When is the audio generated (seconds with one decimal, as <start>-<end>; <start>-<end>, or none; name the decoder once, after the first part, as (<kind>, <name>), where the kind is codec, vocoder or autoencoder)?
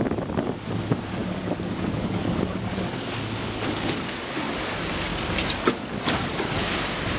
1.2-4.4 (codec, DAC); 5.1-6.2